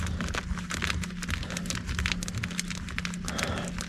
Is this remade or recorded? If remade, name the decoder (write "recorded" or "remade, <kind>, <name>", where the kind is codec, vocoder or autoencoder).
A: recorded